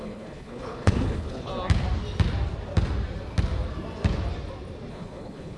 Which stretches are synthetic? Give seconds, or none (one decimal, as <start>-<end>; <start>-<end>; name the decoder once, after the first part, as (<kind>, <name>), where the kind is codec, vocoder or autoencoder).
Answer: 0.0-1.5 (codec, HILCodec); 4.9-5.6